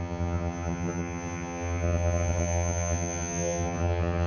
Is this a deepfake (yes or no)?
yes